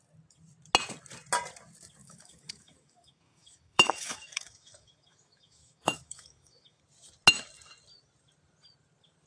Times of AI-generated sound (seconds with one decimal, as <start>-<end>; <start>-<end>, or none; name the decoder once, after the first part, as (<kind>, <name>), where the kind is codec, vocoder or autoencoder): 2.0-6.8 (autoencoder, DAC-VAE)